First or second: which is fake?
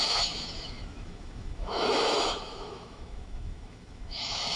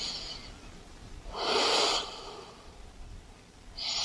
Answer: first